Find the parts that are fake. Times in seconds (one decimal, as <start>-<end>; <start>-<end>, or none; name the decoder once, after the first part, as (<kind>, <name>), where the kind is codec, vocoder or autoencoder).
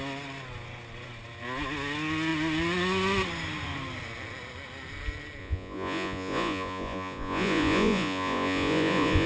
5.4-9.3 (vocoder, Vocos)